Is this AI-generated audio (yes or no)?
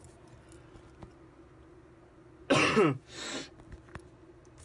no